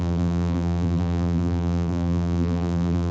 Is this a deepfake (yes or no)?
yes